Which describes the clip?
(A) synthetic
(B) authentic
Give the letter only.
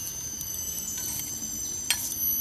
B